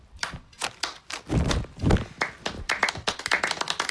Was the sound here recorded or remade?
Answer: remade